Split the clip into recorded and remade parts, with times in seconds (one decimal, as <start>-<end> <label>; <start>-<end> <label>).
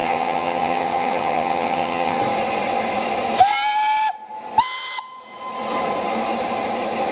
0.0-2.2 remade; 2.2-7.1 recorded